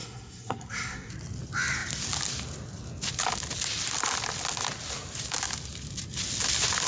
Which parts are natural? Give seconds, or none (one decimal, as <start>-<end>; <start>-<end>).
1.1-6.9